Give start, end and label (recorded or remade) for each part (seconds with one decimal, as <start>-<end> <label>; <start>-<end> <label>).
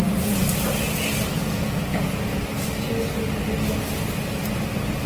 0.0-5.1 recorded